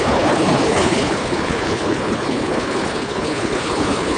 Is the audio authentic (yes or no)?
no